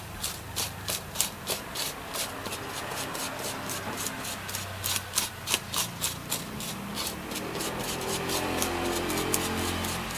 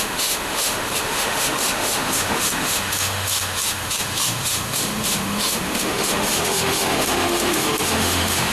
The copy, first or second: second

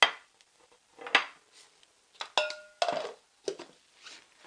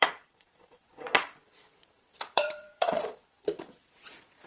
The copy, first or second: second